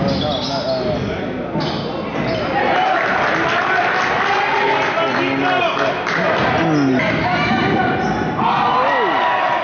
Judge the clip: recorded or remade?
recorded